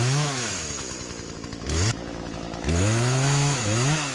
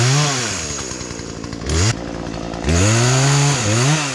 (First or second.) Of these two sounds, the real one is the second